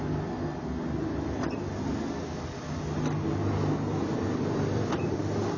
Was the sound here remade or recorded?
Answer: recorded